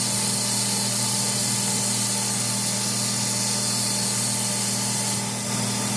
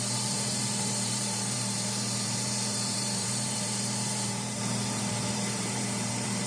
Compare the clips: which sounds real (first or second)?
first